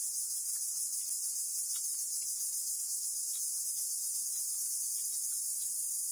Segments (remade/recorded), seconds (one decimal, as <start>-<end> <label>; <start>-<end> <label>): 0.0-6.1 recorded